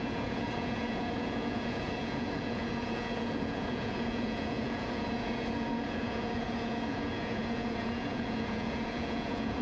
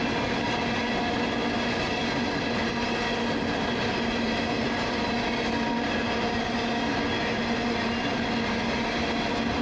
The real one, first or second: second